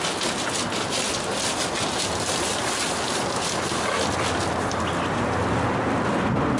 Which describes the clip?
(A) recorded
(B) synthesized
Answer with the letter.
A